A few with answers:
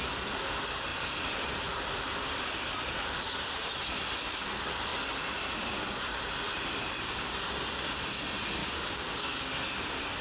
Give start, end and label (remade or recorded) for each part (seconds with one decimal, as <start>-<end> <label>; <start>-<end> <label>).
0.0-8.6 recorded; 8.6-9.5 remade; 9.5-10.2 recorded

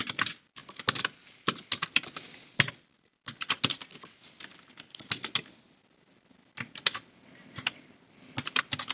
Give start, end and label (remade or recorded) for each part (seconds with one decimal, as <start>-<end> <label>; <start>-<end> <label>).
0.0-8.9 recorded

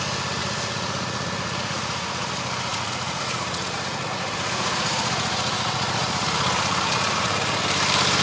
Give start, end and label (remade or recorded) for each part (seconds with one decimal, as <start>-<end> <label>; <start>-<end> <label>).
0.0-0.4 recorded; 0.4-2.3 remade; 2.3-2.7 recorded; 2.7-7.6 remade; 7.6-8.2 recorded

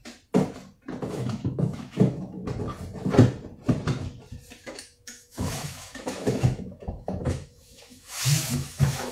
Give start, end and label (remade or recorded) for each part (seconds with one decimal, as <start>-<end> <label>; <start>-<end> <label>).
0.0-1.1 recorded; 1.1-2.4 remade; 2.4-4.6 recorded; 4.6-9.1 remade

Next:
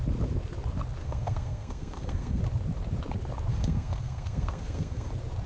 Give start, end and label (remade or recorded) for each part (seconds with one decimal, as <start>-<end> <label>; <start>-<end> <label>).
0.0-1.0 recorded; 1.0-2.4 remade; 2.4-3.5 recorded; 3.5-5.1 remade; 5.1-5.5 recorded